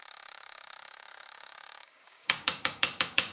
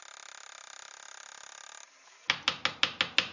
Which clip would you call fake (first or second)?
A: first